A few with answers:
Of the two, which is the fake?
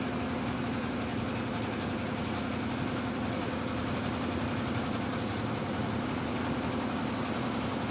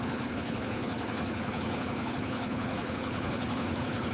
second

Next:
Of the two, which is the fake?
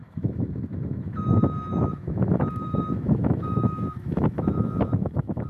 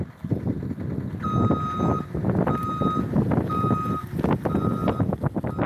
first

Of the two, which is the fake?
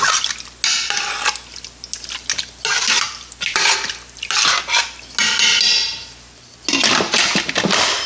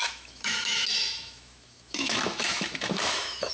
second